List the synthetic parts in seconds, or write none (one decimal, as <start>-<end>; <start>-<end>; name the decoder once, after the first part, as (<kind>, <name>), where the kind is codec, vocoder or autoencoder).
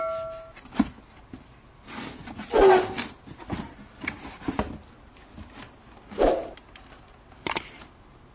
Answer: none